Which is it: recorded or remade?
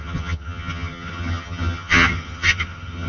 remade